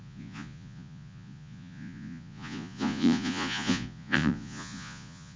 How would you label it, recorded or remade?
remade